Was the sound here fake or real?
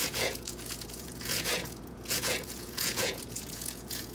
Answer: fake